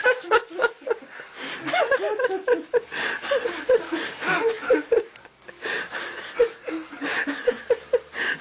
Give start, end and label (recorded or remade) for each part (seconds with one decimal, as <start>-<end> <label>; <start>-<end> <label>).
0.0-8.4 recorded